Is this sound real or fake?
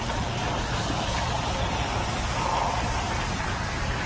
real